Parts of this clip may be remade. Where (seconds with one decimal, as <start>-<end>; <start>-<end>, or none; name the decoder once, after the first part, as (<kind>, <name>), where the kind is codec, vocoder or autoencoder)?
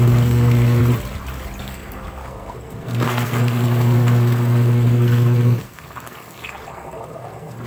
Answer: 0.0-0.8 (codec, SNAC); 1.6-7.7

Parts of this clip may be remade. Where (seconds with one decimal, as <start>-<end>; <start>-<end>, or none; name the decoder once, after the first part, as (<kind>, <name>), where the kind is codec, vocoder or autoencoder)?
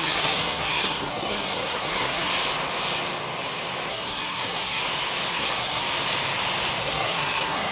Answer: 0.0-2.3 (codec, SNAC); 3.9-4.8; 5.3-5.8; 6.8-7.7